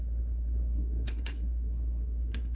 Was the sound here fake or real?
fake